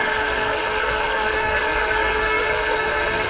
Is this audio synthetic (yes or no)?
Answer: yes